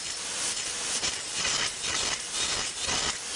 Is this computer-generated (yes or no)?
no